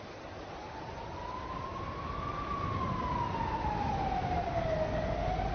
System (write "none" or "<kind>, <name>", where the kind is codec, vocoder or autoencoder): none